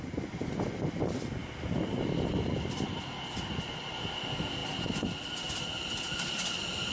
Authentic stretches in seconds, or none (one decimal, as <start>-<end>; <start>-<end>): 0.0-6.9